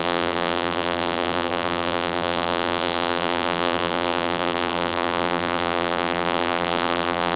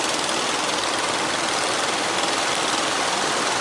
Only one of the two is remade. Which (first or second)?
first